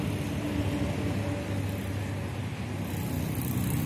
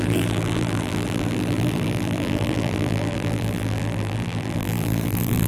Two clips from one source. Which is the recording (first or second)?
first